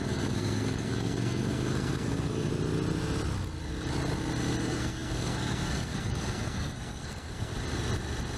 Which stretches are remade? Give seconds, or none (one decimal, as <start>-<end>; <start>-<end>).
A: 0.0-2.5; 4.6-7.5